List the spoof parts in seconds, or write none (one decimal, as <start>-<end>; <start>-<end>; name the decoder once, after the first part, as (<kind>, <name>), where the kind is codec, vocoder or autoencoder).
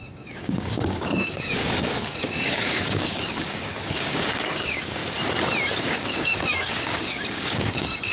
0.0-5.0 (codec, DAC); 5.8-8.1